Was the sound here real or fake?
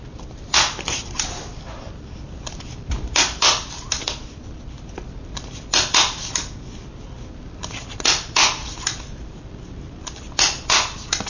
fake